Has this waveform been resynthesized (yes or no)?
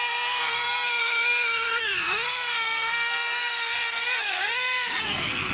yes